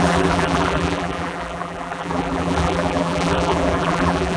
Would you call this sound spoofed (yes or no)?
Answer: yes